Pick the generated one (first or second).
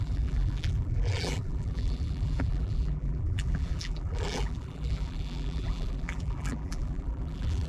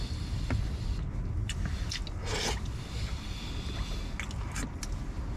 first